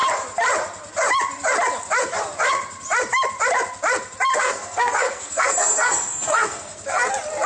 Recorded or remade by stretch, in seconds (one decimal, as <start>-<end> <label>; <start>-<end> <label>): 0.0-4.3 recorded; 4.3-7.1 remade; 7.1-7.5 recorded